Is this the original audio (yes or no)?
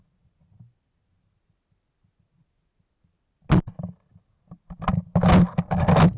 yes